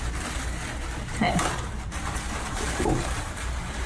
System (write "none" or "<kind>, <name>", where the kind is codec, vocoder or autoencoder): vocoder, BigVGAN v2